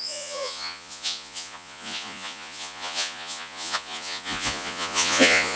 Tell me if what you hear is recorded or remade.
remade